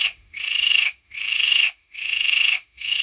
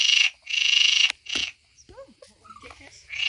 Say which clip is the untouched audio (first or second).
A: second